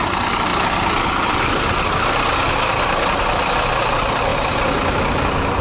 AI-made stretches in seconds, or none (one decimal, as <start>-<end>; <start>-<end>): none